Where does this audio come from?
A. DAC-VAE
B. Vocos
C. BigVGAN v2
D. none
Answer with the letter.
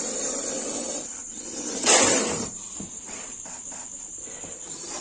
C